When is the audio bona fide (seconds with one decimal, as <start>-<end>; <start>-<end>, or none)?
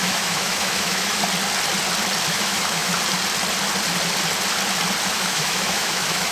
1.2-2.3; 2.9-5.1